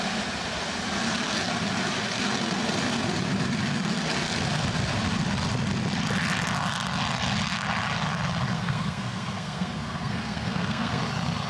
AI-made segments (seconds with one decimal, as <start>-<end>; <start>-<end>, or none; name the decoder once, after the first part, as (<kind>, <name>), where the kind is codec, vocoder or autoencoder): 8.5-11.0 (codec, SNAC)